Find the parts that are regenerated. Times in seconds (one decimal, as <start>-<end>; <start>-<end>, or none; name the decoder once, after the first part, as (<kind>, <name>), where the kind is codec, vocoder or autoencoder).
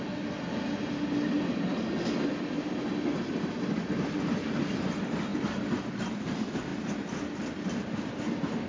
none